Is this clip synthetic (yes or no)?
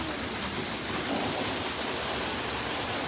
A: yes